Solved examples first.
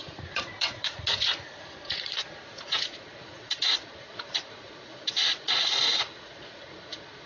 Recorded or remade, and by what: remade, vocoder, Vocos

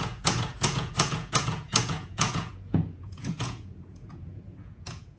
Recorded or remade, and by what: remade, vocoder, Vocos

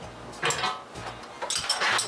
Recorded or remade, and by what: recorded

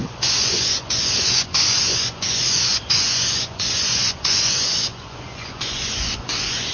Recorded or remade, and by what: remade, vocoder, Vocos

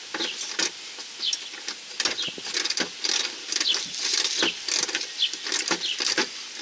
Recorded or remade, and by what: recorded